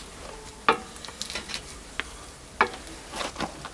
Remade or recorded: recorded